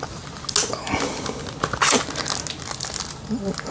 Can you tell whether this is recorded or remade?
recorded